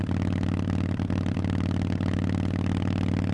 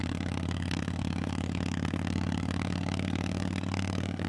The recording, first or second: first